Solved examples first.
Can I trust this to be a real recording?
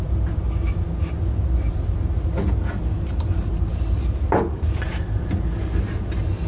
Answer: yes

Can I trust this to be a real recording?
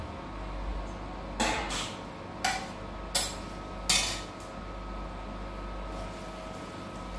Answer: yes